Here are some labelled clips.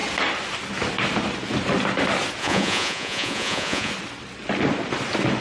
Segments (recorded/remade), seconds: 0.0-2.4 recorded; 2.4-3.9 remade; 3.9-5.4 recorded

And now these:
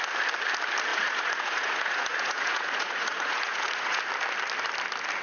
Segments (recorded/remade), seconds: 0.0-0.9 recorded; 0.9-4.0 remade; 4.0-5.2 recorded

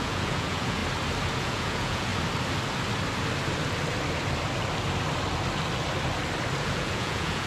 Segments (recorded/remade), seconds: 0.0-0.8 remade; 0.8-1.4 recorded; 1.4-2.1 remade; 2.1-6.6 recorded; 6.6-7.5 remade

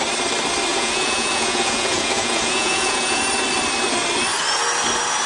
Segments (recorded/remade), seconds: 0.0-0.7 recorded; 0.7-3.2 remade; 3.2-5.3 recorded

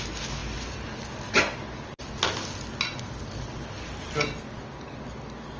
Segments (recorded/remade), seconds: 0.0-5.6 recorded